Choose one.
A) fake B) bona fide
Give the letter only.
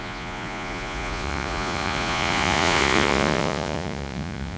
A